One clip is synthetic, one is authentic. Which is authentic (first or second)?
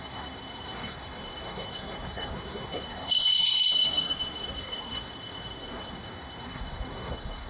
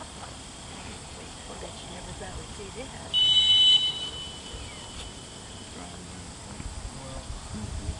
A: second